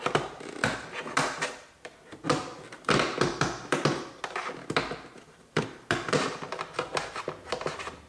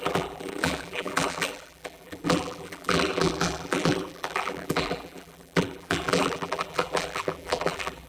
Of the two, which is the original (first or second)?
first